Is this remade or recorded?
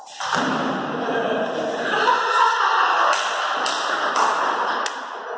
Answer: recorded